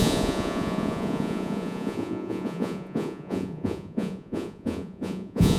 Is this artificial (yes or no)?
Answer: yes